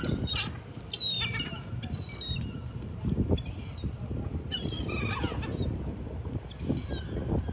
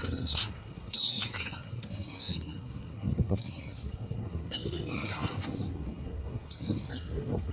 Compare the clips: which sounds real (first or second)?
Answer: first